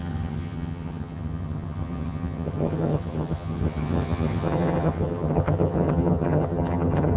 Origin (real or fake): fake